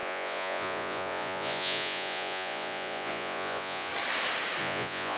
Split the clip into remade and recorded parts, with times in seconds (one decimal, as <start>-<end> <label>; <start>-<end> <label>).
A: 0.0-3.9 remade; 3.9-4.6 recorded; 4.6-5.2 remade